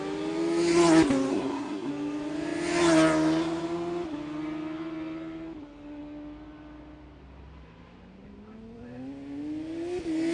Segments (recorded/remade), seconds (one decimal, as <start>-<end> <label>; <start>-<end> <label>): 0.0-1.3 recorded; 1.3-1.9 remade; 1.9-10.3 recorded